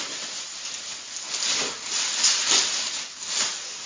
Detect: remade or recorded recorded